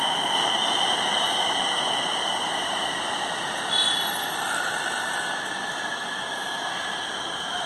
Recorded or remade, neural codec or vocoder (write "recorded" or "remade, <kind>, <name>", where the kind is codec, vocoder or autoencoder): recorded